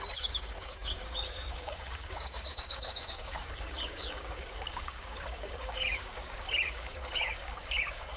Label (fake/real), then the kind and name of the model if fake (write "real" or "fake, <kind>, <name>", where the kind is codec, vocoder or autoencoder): fake, codec, DAC